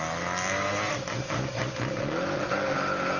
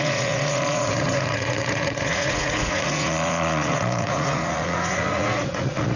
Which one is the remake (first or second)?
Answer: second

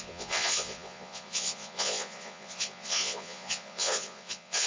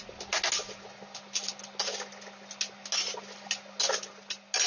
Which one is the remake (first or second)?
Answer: first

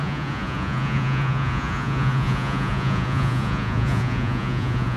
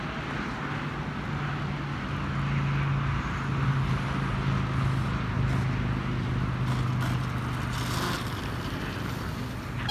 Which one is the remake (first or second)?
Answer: first